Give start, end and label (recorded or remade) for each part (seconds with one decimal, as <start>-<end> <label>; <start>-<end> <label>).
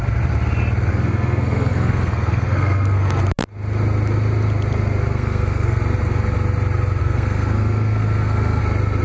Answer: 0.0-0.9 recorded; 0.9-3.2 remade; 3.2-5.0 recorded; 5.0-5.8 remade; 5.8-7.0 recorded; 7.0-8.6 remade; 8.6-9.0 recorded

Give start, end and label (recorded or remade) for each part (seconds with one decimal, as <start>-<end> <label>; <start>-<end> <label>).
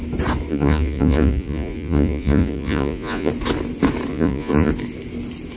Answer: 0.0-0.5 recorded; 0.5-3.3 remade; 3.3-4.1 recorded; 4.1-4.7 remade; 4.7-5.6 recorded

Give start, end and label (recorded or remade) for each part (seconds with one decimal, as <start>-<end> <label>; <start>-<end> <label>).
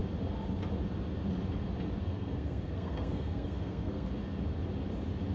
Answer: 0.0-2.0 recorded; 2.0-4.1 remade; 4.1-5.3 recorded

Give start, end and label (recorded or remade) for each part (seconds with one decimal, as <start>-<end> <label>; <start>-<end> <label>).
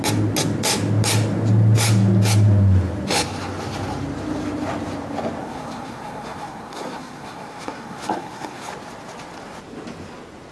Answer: 0.0-5.4 recorded; 5.4-8.7 remade; 8.7-10.5 recorded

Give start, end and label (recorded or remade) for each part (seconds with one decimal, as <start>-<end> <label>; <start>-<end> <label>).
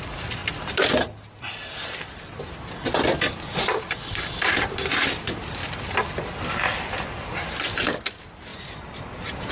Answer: 0.0-0.4 remade; 0.4-1.5 recorded; 1.5-5.6 remade; 5.6-8.1 recorded; 8.1-8.5 remade; 8.5-9.5 recorded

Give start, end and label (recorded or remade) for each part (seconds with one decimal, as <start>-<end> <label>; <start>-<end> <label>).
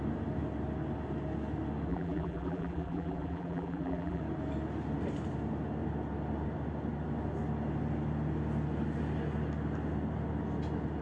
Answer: 0.0-1.9 recorded; 1.9-4.2 remade; 4.2-11.0 recorded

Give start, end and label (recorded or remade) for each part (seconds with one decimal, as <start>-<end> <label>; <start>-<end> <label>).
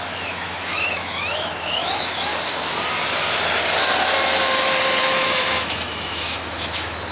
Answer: 0.0-2.3 remade; 2.3-5.0 recorded; 5.0-7.1 remade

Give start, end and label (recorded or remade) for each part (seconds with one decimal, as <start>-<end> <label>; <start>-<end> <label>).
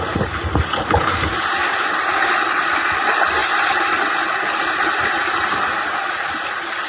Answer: 0.0-1.6 recorded; 1.6-2.8 remade; 2.8-6.9 recorded